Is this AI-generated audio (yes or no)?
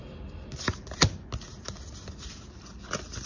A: no